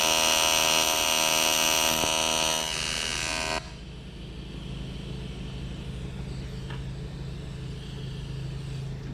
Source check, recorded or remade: recorded